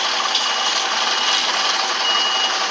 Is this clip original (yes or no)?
yes